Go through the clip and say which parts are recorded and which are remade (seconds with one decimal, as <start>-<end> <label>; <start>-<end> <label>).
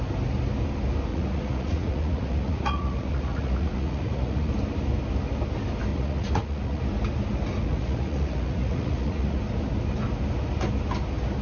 0.0-1.1 recorded; 1.1-4.5 remade; 4.5-5.9 recorded; 5.9-6.8 remade; 6.8-7.6 recorded; 7.6-9.4 remade; 9.4-11.4 recorded